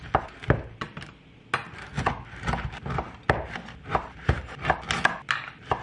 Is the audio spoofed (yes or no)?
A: no